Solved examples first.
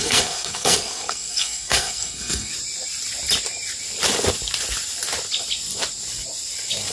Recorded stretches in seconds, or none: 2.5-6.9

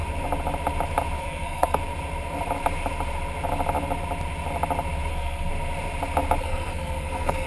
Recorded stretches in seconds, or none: 0.0-1.2; 1.8-5.1; 5.5-6.4

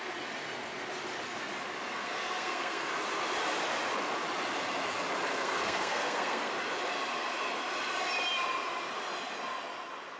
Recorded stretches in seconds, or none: 0.0-1.9; 2.9-5.3; 6.5-10.2

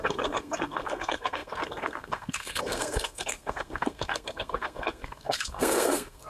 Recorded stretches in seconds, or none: none

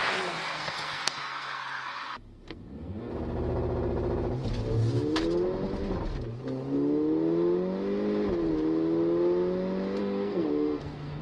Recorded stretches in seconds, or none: 3.1-10.0

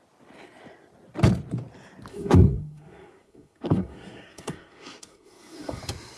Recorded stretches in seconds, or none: 0.0-2.1; 5.8-6.2

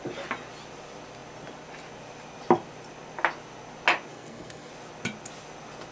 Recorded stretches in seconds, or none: 0.0-4.1; 4.7-5.9